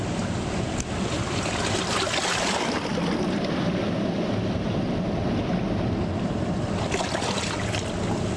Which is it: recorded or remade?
recorded